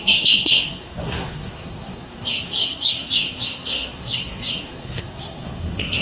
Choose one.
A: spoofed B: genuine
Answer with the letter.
A